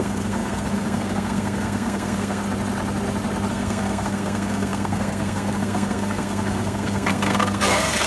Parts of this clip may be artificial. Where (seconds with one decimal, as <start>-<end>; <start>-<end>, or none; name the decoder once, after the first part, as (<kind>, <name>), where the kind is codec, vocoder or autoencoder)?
0.0-2.4 (codec, SNAC); 3.5-8.1